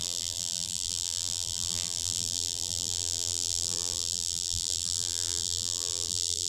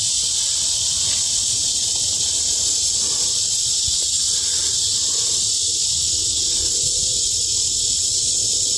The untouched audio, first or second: second